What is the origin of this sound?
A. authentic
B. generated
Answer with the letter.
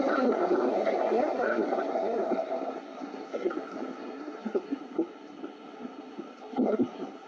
B